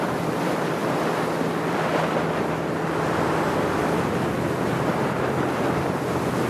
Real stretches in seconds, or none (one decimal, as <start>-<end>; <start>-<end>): 0.8-4.7